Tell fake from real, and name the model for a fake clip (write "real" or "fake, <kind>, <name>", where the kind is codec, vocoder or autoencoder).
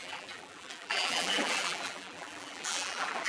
fake, vocoder, BigVGAN v2